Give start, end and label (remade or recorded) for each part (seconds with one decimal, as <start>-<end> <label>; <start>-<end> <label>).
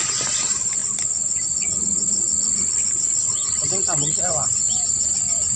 0.0-0.8 remade; 0.8-4.2 recorded; 4.2-5.6 remade